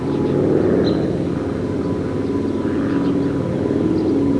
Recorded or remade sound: recorded